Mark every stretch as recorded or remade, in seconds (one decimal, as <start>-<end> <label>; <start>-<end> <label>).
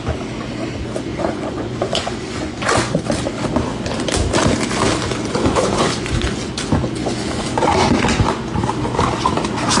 0.0-1.1 recorded; 1.1-3.0 remade; 3.0-5.2 recorded; 5.2-6.5 remade; 6.5-7.0 recorded; 7.0-8.0 remade; 8.0-9.8 recorded